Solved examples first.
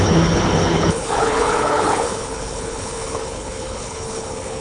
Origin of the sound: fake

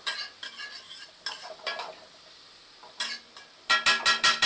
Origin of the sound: real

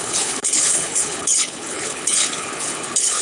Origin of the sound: fake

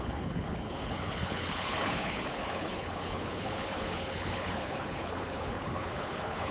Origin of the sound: fake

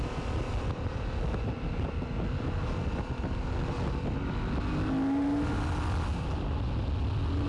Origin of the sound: real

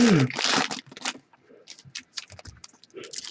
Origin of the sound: real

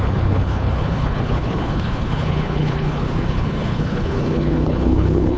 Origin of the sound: fake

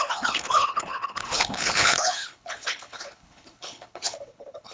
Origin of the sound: fake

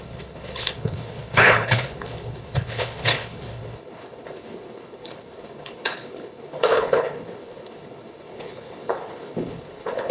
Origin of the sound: fake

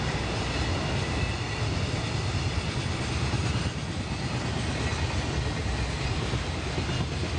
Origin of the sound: real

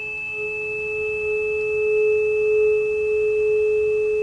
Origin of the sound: real